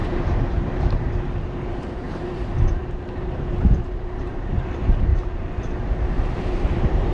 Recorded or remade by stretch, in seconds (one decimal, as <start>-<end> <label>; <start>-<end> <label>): 0.0-5.1 remade; 5.1-6.5 recorded; 6.5-7.1 remade